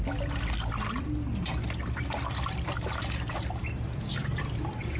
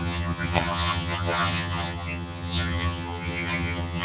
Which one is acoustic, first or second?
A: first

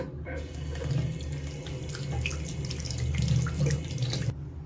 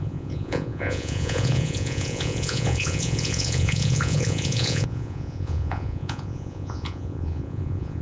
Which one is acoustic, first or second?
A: first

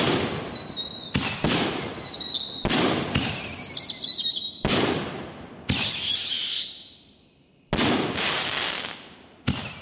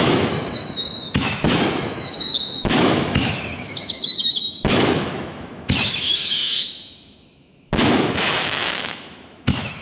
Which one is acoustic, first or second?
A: first